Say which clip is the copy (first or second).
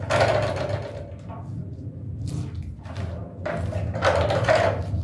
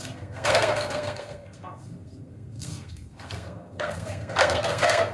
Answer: second